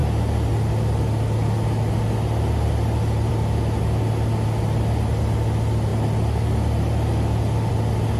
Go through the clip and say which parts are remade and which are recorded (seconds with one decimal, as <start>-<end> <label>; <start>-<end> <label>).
0.0-8.2 recorded